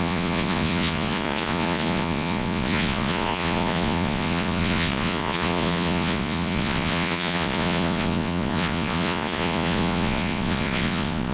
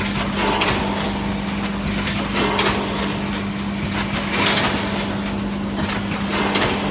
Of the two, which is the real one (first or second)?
second